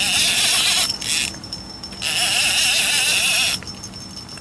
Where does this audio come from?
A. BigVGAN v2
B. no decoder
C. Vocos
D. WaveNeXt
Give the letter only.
B